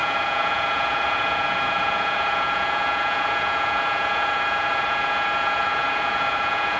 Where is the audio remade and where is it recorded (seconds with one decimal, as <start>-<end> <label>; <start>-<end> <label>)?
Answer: 0.0-6.8 remade